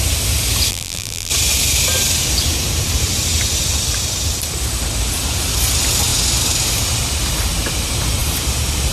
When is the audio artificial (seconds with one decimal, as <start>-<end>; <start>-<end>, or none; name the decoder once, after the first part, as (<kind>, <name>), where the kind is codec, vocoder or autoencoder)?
0.7-1.3 (vocoder, BigVGAN v2)